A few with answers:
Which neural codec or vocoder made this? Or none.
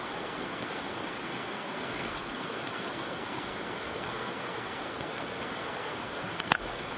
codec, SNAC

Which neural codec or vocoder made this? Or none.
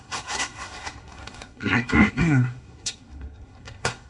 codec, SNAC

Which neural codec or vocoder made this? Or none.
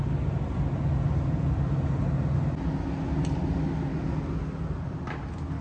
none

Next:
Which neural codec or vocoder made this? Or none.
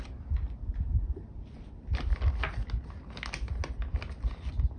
none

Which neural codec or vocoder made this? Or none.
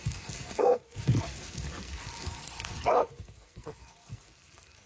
codec, SNAC